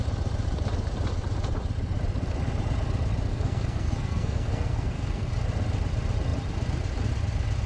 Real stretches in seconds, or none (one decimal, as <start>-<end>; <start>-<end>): 0.0-3.3; 5.3-7.7